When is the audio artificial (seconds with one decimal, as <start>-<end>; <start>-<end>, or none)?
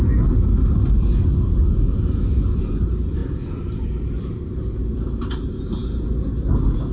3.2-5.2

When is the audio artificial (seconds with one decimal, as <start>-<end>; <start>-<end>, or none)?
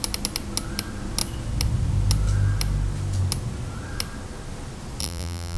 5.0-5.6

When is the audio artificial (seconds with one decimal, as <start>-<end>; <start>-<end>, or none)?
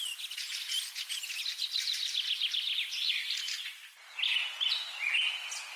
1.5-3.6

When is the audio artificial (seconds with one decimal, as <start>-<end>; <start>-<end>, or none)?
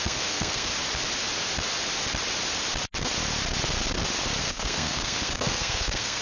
0.0-0.7; 4.4-6.2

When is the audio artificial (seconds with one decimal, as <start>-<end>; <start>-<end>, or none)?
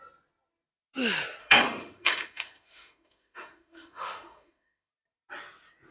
1.4-4.9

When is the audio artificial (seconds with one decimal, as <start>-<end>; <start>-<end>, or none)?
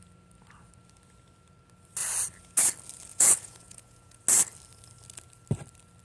3.1-4.2